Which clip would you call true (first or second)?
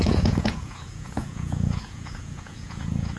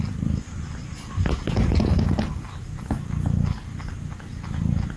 second